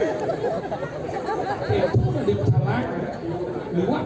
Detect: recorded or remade recorded